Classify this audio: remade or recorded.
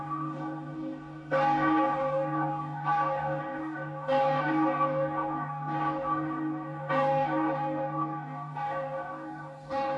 remade